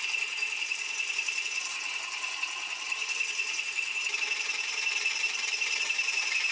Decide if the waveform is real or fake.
fake